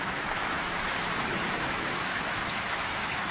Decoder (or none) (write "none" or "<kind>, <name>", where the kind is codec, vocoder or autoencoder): autoencoder, DAC-VAE